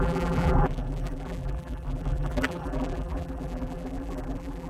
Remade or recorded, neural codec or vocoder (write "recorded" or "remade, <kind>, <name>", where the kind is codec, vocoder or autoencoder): remade, vocoder, BigVGAN v2